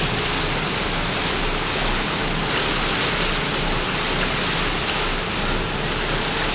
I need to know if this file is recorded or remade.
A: recorded